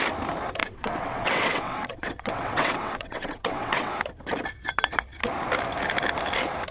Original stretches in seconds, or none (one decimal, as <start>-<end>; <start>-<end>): 0.0-0.6; 3.9-6.7